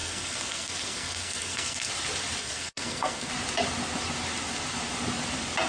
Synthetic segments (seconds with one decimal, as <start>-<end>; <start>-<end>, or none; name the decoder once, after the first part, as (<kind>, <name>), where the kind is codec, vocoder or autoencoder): 0.0-1.9 (codec, SNAC); 2.4-3.3

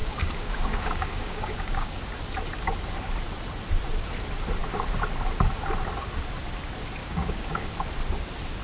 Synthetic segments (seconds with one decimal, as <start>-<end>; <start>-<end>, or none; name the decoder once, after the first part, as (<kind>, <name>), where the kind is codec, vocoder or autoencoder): 0.0-2.0 (codec, DAC); 7.0-7.7

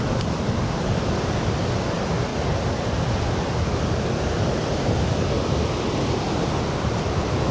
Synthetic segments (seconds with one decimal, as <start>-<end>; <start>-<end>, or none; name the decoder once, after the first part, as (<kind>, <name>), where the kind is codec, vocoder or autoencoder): none

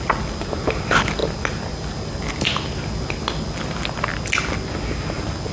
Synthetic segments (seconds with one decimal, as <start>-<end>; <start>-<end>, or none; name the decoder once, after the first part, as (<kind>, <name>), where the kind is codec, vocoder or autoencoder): none

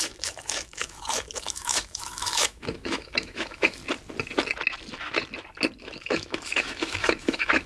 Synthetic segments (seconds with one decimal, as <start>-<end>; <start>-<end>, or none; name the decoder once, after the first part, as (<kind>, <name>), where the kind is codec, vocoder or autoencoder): 0.0-3.8 (autoencoder, DAC-VAE); 5.8-7.7